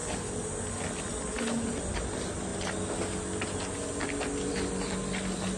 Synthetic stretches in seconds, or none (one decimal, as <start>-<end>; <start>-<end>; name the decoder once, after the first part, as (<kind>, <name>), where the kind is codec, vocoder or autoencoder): none